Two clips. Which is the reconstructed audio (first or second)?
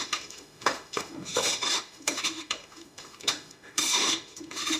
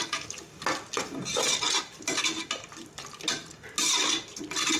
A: first